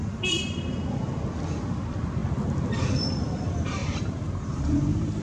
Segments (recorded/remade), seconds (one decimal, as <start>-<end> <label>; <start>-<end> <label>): 0.0-3.8 recorded; 3.8-5.2 remade